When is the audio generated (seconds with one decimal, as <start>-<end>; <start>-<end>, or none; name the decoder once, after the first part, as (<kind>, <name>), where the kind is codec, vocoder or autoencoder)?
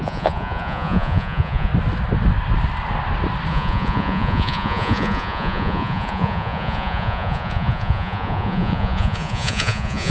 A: 0.0-1.7 (vocoder, Vocos); 3.5-10.1